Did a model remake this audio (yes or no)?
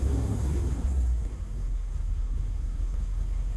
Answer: yes